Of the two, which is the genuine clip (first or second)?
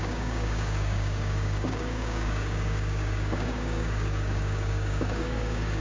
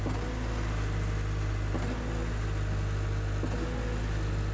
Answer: second